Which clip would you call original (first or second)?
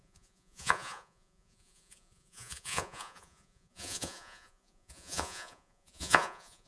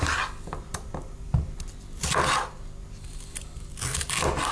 second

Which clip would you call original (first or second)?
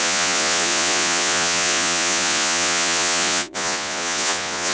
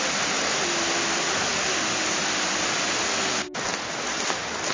second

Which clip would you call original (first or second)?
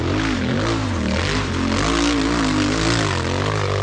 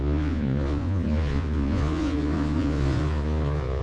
first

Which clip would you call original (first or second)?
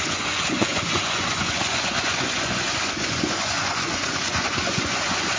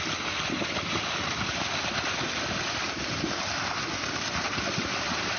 second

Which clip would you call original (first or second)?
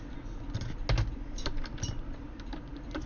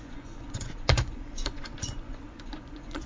first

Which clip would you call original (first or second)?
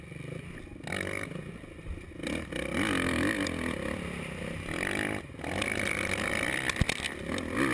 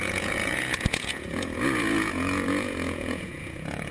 first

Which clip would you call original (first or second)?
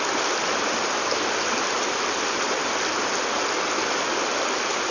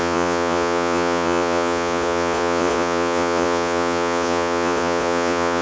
first